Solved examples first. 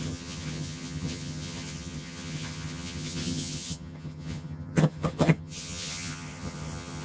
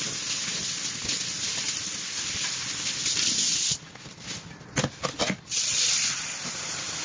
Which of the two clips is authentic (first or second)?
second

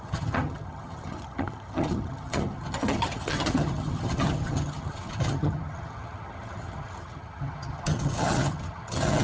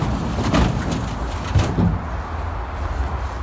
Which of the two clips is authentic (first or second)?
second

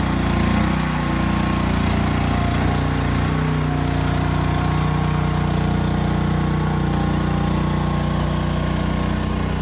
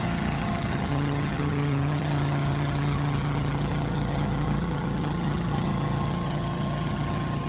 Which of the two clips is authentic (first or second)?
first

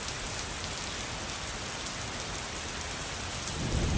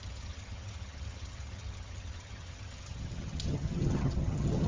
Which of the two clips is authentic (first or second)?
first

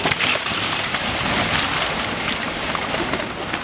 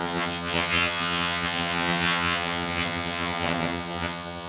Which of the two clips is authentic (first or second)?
first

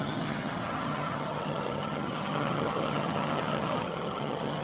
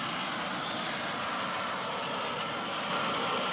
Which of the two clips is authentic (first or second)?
second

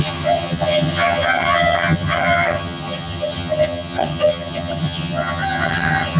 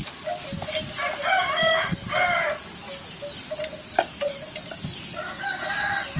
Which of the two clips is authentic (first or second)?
second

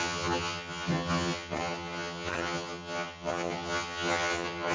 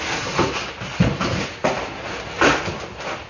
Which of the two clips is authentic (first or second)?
second